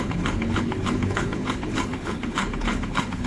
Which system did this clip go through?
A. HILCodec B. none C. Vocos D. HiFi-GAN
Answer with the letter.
A